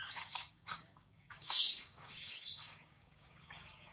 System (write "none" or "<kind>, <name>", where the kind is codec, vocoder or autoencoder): codec, DAC